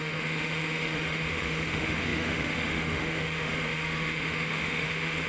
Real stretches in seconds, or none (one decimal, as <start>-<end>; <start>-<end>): none